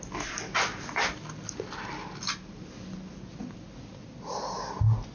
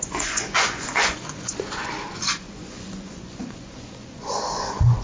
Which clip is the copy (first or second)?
second